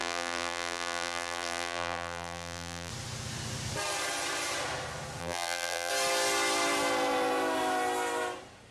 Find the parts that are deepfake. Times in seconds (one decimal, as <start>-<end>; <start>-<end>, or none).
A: 0.0-2.9; 5.2-5.9

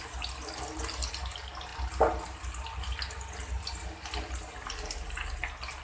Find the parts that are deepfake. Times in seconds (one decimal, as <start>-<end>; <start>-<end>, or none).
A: none

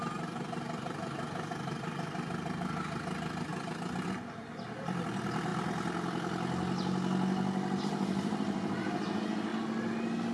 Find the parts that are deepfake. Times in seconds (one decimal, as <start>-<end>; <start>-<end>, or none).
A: 0.0-5.5; 7.8-9.5